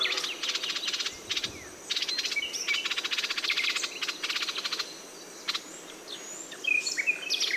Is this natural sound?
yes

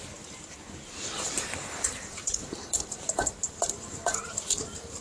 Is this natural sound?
no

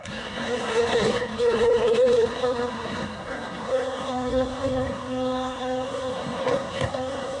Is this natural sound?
no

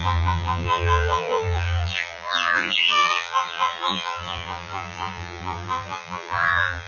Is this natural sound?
no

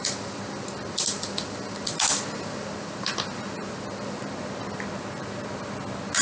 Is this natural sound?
yes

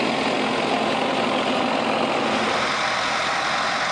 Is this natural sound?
yes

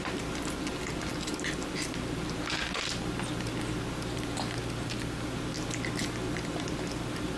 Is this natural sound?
yes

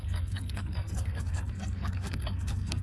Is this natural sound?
no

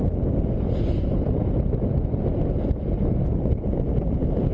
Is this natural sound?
yes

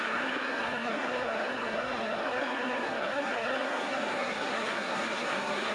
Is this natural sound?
no